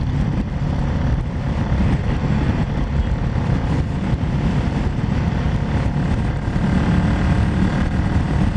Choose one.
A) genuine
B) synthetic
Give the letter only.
A